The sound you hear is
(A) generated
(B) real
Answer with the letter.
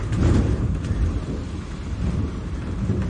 A